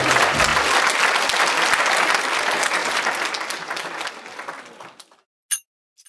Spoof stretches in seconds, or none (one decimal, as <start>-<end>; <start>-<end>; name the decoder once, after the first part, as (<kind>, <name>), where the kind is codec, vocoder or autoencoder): none